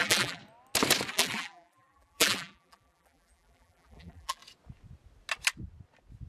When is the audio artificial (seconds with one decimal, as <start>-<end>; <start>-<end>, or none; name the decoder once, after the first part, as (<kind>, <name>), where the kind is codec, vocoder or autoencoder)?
0.0-0.4 (vocoder, BigVGAN v2); 1.1-4.4